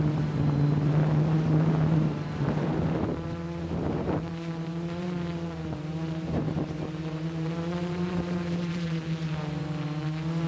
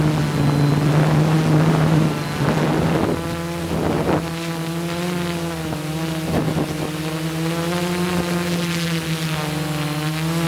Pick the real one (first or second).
second